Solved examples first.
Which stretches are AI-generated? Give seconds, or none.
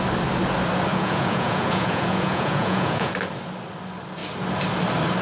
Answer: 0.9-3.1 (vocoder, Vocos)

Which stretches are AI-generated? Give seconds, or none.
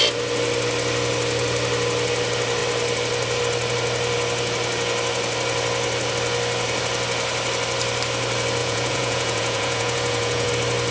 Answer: 8.6-10.5 (vocoder, Vocos)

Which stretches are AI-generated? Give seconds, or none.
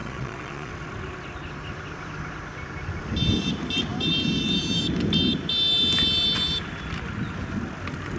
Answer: 0.0-0.7 (vocoder, Vocos)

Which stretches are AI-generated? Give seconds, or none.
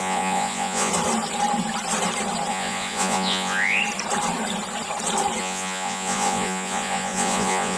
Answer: 0.0-0.9 (vocoder, Vocos); 2.5-3.8; 5.4-7.8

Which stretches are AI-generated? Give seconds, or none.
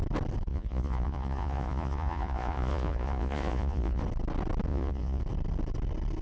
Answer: 0.5-4.0 (vocoder, Vocos); 4.7-5.2